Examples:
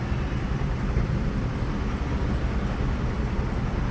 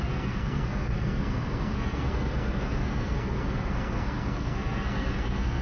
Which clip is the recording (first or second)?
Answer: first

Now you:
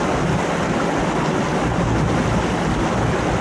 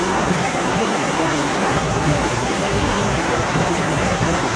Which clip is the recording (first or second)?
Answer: first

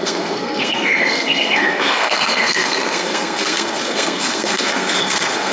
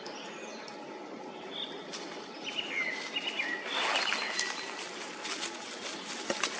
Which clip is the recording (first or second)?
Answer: second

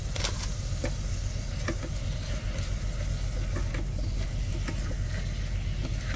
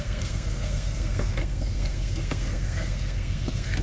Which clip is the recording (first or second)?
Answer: first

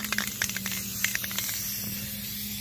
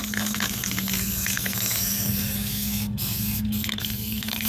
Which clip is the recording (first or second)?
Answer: first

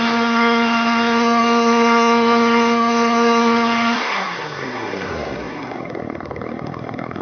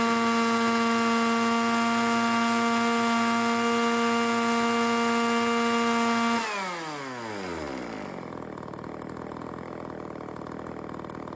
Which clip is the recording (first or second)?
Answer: second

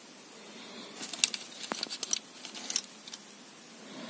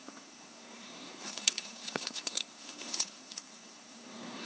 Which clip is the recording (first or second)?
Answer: first